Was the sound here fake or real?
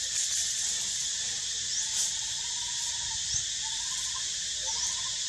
real